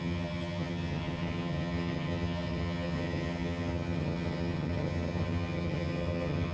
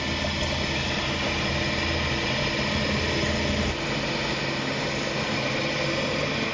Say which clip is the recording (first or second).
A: second